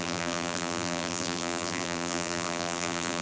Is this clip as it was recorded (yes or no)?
no